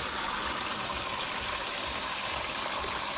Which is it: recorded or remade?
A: recorded